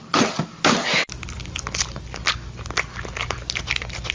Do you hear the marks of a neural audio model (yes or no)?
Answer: no